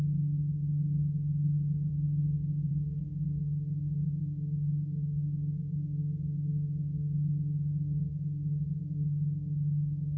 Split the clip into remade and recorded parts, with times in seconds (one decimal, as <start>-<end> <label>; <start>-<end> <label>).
0.0-1.9 remade; 1.9-2.7 recorded; 2.7-10.2 remade